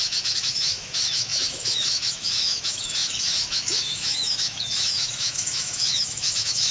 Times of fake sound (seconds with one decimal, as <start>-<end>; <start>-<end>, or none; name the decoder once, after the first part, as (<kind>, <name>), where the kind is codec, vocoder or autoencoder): 0.0-6.7 (autoencoder, DAC-VAE)